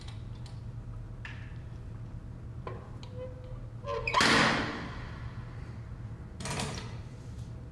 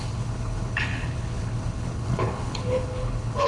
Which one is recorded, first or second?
first